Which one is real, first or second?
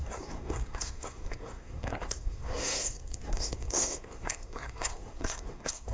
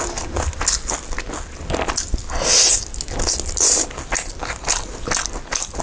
second